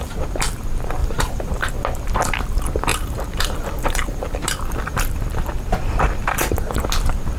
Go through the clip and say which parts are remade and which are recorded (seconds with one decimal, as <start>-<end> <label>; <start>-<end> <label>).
0.0-1.0 recorded; 1.0-1.7 remade; 1.7-2.9 recorded; 2.9-5.0 remade; 5.0-7.4 recorded